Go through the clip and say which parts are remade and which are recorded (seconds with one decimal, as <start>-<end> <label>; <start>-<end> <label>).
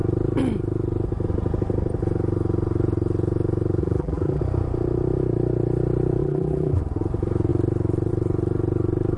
0.0-3.8 recorded; 3.8-4.4 remade; 4.4-6.2 recorded; 6.2-6.8 remade; 6.8-9.2 recorded